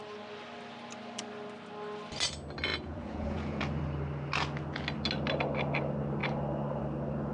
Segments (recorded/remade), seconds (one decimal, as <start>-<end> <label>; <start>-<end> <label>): 0.0-2.7 recorded; 2.7-3.6 remade; 3.6-7.3 recorded